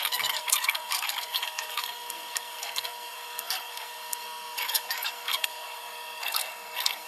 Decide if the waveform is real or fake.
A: fake